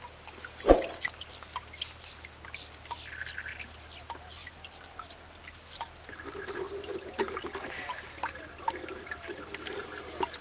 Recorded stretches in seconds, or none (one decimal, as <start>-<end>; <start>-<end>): 0.0-10.4